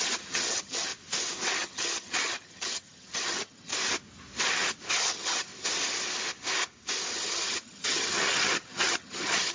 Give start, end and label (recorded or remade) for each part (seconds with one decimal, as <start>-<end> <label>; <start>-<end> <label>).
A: 0.0-0.9 remade; 0.9-1.5 recorded; 1.5-3.7 remade; 3.7-4.9 recorded; 4.9-5.5 remade; 5.5-7.1 recorded; 7.1-9.5 remade